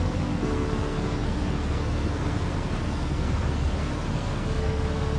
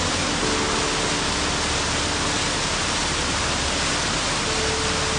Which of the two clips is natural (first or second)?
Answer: second